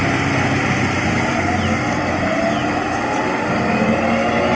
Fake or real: real